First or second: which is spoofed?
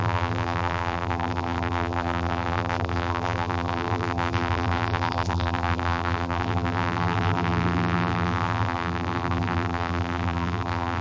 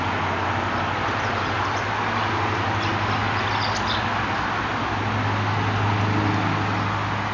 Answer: first